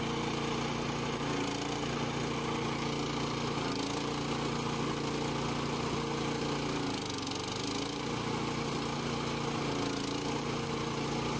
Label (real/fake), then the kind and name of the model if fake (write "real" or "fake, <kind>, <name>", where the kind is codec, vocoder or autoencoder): real